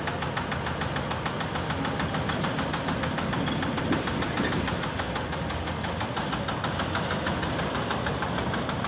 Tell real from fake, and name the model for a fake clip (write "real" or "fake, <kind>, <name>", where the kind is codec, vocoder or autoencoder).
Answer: real